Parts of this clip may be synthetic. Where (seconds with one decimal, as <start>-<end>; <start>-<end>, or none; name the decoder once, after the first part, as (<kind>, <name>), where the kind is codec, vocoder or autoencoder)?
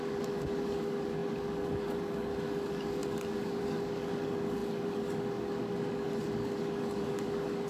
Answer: 0.0-7.7 (codec, DAC)